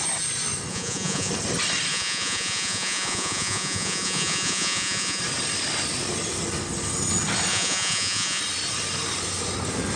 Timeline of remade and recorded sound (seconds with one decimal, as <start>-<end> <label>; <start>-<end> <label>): 0.0-0.7 recorded; 0.7-1.3 remade; 1.3-1.9 recorded; 1.9-5.2 remade; 5.2-7.5 recorded; 7.5-8.4 remade; 8.4-10.0 recorded